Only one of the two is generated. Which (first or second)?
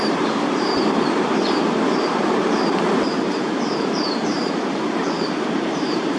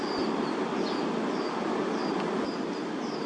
first